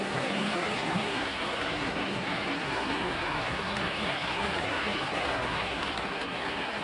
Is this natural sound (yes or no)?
no